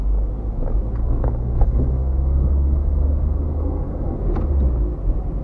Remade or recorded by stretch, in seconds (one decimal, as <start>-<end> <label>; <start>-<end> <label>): 0.0-1.0 recorded; 1.0-4.2 remade; 4.2-5.4 recorded